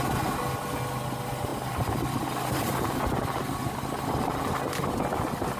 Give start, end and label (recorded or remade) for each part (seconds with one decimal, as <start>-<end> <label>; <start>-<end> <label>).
0.0-5.6 recorded